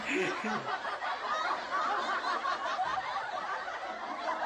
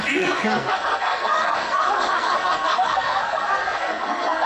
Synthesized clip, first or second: second